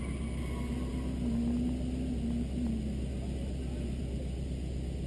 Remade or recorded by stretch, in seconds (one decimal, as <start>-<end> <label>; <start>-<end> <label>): 0.0-5.1 recorded